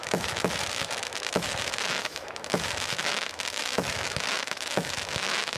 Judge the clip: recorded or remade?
remade